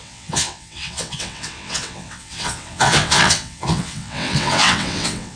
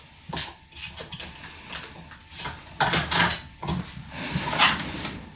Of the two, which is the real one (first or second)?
second